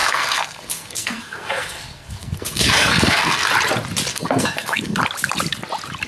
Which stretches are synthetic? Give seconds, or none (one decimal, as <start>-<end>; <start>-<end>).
0.0-3.5; 4.1-5.0